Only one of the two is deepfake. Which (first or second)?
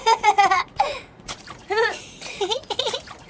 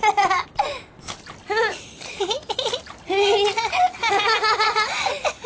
first